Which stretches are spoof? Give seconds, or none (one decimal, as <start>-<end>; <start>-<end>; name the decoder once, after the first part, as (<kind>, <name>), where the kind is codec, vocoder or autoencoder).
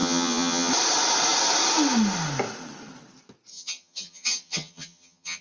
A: 0.0-0.7 (vocoder, HiFi-GAN); 3.5-5.4